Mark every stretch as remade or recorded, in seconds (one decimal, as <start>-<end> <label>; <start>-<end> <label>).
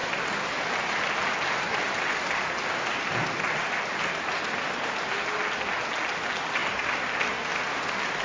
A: 0.0-8.2 recorded